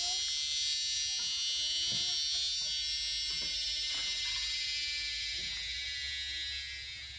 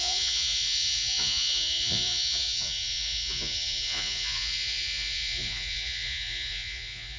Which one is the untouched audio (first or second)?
first